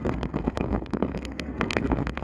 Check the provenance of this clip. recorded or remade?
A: remade